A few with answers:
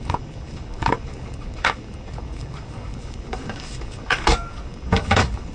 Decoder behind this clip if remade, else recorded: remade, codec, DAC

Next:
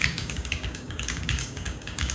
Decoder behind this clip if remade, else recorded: remade, codec, DAC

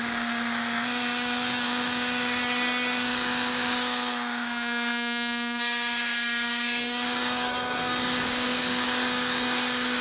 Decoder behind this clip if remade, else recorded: remade, codec, DAC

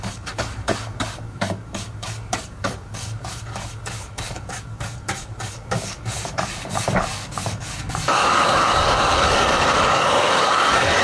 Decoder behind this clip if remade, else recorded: remade, codec, DAC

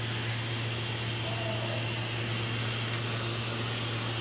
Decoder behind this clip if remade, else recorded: recorded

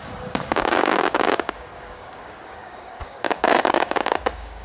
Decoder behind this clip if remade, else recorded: remade, codec, DAC